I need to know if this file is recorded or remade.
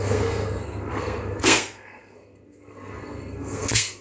remade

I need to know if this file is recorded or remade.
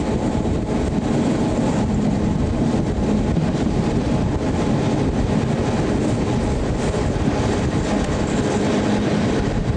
recorded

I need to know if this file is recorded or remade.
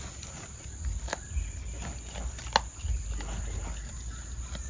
recorded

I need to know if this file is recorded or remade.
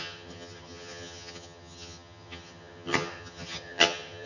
remade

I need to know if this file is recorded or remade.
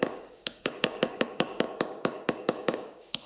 remade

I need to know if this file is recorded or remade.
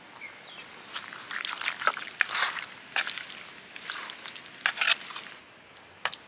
recorded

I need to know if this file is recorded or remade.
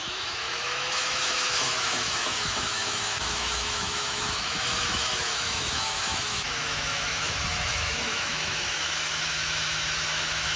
remade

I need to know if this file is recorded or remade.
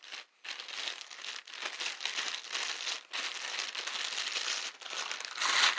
recorded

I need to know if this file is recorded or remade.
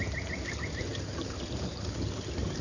recorded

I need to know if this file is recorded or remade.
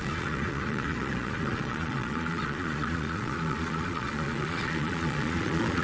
remade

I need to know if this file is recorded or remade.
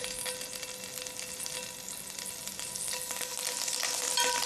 recorded